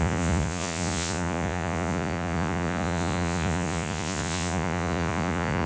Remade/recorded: remade